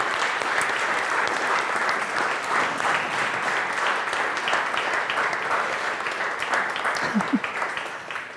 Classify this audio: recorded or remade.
recorded